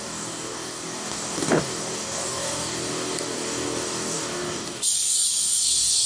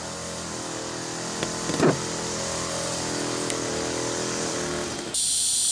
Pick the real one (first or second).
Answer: second